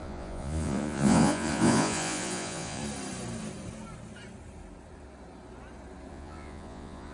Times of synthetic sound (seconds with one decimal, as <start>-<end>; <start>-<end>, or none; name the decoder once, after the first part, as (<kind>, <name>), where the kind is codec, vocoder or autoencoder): 0.0-2.8 (vocoder, Vocos); 6.1-7.1